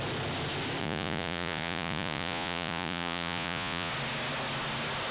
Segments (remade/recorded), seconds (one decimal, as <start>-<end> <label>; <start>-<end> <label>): 0.0-0.8 recorded; 0.8-3.9 remade; 3.9-5.1 recorded